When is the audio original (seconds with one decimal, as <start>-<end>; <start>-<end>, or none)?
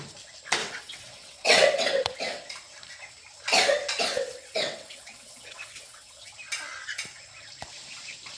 0.0-0.6; 2.1-4.1; 6.3-8.4